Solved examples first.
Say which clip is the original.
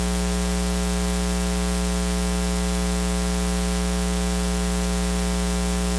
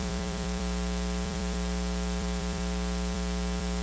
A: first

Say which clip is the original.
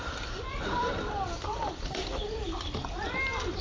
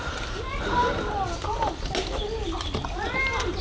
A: second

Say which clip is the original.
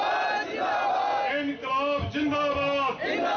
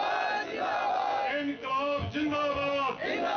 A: first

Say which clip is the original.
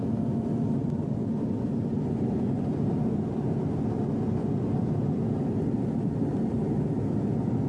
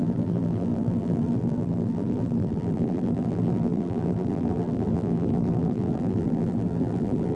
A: first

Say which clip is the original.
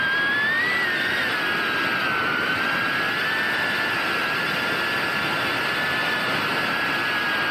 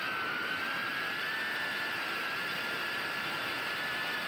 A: first